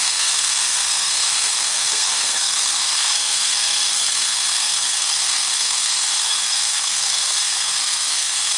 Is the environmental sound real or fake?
fake